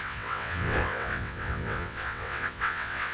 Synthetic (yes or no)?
yes